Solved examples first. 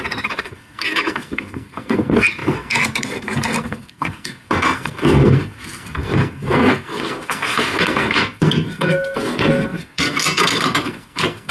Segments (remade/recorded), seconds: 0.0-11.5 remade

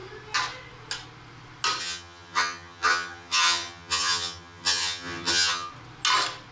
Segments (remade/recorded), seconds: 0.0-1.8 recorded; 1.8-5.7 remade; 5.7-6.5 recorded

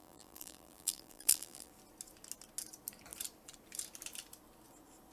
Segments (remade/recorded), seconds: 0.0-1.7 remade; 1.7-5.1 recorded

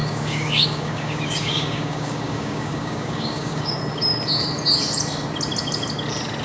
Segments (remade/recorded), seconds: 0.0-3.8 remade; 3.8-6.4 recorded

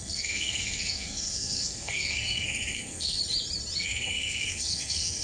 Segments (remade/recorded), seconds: 0.0-3.2 remade; 3.2-3.8 recorded; 3.8-5.2 remade

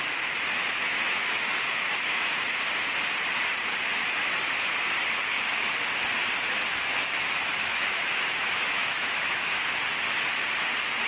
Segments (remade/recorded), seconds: 0.0-0.8 recorded; 0.8-2.6 remade; 2.6-6.7 recorded; 6.7-9.6 remade; 9.6-11.1 recorded